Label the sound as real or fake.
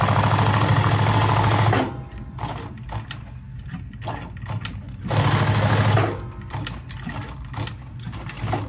real